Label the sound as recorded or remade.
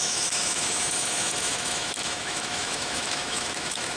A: remade